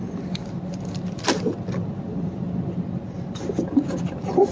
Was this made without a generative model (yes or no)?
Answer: yes